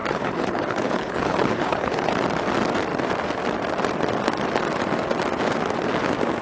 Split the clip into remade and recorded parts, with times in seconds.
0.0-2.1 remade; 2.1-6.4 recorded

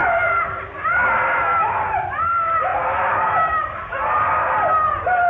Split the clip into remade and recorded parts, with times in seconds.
0.0-5.3 recorded

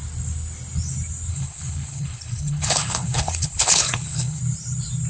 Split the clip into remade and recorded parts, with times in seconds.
0.0-1.3 recorded; 1.3-4.4 remade; 4.4-5.1 recorded

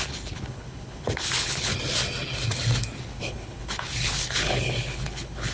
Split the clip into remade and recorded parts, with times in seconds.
0.0-1.7 remade; 1.7-3.0 recorded; 3.0-5.5 remade

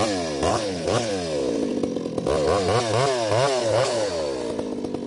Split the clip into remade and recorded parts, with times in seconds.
0.0-0.5 recorded; 0.5-1.1 remade; 1.1-3.6 recorded; 3.6-4.1 remade; 4.1-5.1 recorded

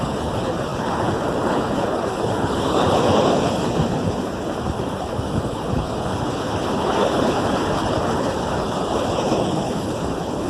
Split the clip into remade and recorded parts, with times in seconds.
0.0-10.5 remade

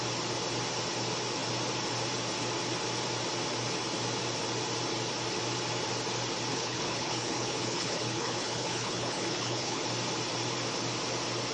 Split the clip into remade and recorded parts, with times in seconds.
0.0-6.5 recorded; 6.5-9.8 remade; 9.8-11.5 recorded